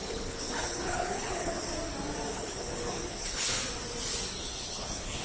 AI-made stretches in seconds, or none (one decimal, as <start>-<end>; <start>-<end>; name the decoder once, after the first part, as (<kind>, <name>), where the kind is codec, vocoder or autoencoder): 0.0-1.7 (codec, HILCodec); 2.3-3.6; 4.4-5.2